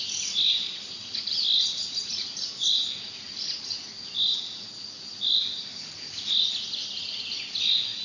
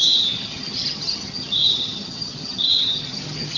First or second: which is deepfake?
second